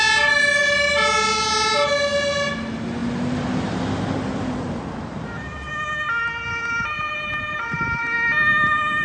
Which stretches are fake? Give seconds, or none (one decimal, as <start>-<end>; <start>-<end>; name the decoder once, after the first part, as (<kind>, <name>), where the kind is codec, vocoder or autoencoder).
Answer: 6.5-8.0 (vocoder, BigVGAN v2)